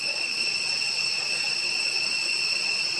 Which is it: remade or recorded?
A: remade